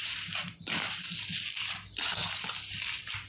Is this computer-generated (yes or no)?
no